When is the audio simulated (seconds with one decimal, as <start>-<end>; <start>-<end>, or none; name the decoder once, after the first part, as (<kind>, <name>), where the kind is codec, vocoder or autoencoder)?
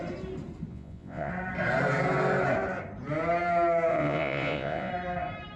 0.7-1.3 (vocoder, Vocos); 3.9-4.9